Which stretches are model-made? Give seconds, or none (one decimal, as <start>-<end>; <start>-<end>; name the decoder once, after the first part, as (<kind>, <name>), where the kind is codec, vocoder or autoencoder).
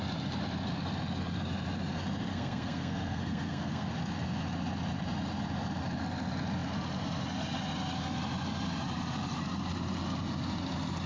2.3-3.9 (codec, SNAC)